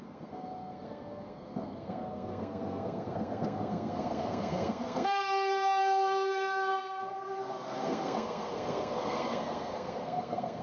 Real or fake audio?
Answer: fake